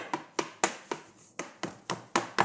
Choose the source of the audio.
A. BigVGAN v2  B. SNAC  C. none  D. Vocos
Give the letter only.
C